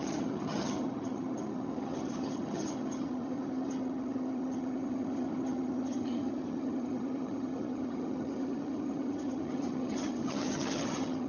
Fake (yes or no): yes